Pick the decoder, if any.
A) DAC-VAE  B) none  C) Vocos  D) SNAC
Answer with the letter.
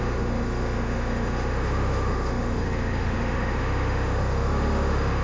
A